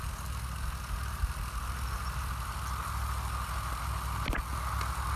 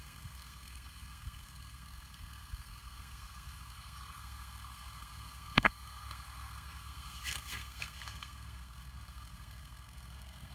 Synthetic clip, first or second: second